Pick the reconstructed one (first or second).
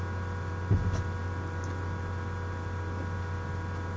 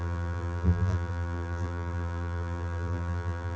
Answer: second